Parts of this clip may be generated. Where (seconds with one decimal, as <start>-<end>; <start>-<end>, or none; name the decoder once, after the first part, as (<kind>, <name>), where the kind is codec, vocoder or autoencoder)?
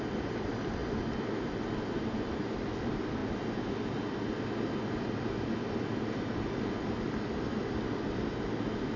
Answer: none